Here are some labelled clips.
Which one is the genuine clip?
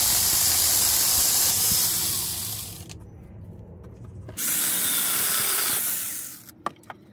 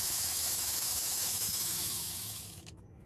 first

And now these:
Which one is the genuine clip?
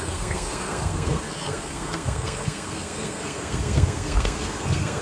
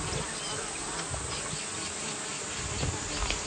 second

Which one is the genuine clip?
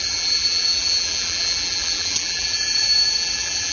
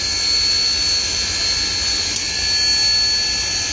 second